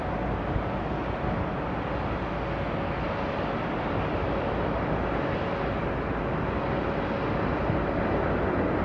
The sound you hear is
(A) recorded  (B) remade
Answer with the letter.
A